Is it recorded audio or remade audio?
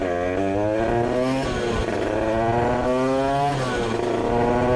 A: recorded